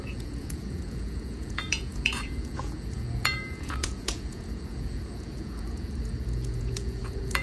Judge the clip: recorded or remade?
remade